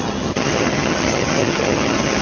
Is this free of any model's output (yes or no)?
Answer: no